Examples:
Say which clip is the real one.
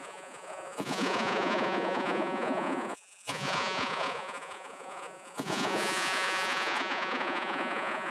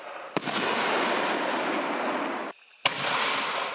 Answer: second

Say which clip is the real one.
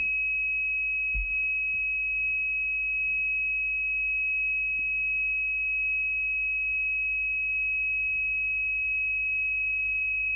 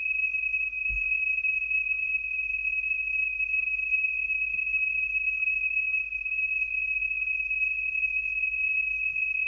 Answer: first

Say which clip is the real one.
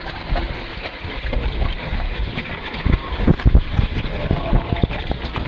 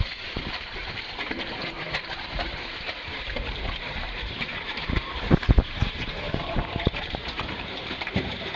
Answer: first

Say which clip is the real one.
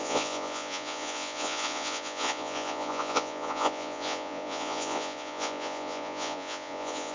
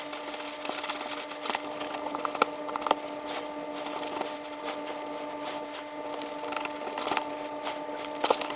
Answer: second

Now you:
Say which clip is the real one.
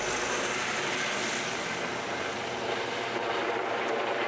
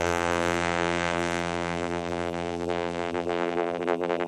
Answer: first